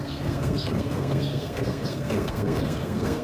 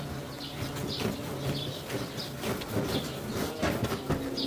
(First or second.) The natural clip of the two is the second